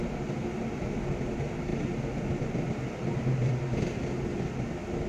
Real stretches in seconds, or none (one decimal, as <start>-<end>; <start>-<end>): 0.0-5.1

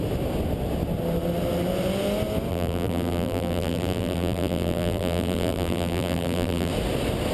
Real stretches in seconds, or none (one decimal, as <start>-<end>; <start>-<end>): 0.0-2.5; 6.7-7.3

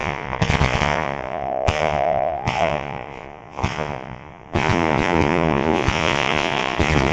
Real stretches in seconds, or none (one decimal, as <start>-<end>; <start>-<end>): none

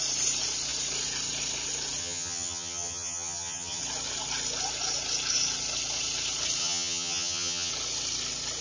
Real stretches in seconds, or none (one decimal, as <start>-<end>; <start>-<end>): 0.0-2.0; 3.8-6.6; 7.7-8.6

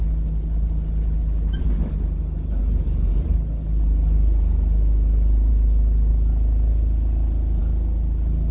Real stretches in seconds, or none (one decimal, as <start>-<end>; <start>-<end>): 0.0-8.5